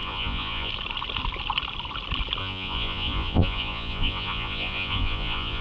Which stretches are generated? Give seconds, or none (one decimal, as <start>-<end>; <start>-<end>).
0.0-0.7; 2.4-5.6